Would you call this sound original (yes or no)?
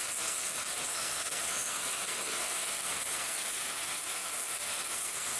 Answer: no